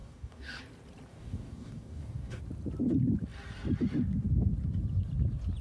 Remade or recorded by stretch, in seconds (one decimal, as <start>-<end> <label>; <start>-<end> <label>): 0.0-0.6 remade; 0.6-1.1 recorded; 1.1-2.4 remade; 2.4-5.6 recorded